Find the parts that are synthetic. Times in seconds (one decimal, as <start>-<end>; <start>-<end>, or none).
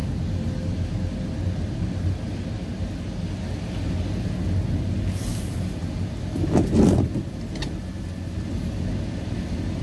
none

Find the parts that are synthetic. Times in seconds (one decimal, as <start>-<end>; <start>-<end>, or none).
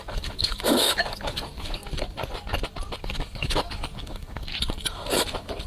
0.0-1.8; 3.0-4.5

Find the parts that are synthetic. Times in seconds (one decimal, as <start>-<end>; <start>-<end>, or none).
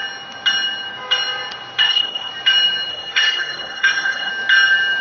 1.8-2.3; 2.9-4.3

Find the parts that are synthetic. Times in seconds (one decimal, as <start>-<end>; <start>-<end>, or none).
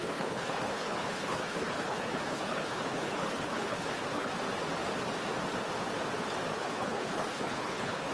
0.0-4.3; 6.5-8.1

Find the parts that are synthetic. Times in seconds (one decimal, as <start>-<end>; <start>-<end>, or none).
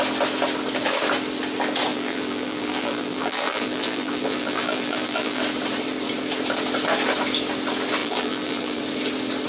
1.9-5.4; 8.0-8.8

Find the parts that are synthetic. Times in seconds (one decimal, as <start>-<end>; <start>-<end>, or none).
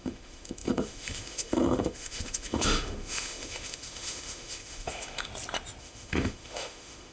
0.0-5.3; 5.8-7.1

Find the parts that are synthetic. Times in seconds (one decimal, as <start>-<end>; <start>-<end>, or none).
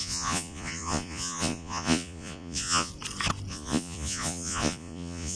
0.0-2.9; 3.5-5.4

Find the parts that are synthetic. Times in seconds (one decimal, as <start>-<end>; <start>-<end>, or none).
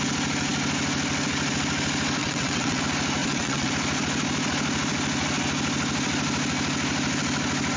2.2-2.8; 3.2-3.7